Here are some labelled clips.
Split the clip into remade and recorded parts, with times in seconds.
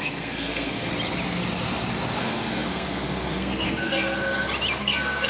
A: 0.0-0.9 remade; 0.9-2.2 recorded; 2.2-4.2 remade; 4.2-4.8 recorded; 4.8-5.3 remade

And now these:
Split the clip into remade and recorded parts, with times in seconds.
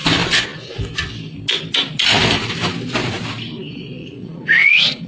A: 0.0-4.0 recorded; 4.0-5.1 remade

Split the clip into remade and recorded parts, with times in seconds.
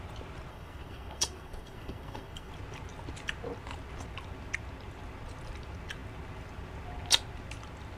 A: 0.0-0.5 recorded; 0.5-2.5 remade; 2.5-8.0 recorded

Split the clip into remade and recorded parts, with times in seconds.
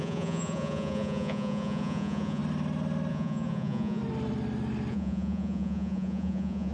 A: 0.0-2.4 remade; 2.4-3.1 recorded; 3.1-4.0 remade; 4.0-4.9 recorded; 4.9-6.7 remade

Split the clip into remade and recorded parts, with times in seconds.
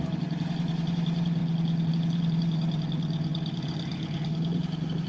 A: 0.0-1.4 remade; 1.4-1.9 recorded; 1.9-3.9 remade; 3.9-5.1 recorded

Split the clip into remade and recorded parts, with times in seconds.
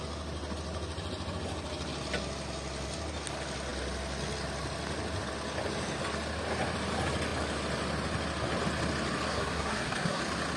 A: 0.0-9.3 recorded; 9.3-10.2 remade; 10.2-10.6 recorded